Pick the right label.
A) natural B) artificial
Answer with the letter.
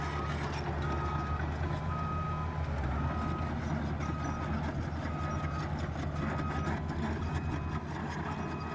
A